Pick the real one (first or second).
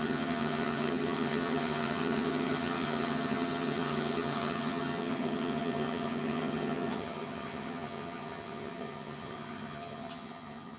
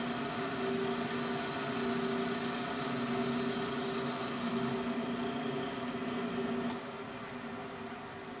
second